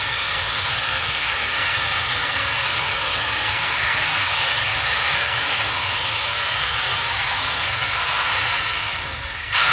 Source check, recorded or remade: remade